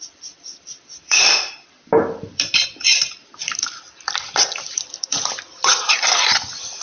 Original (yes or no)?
no